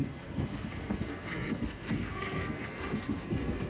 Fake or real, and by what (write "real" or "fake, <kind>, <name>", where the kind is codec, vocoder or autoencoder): fake, codec, SNAC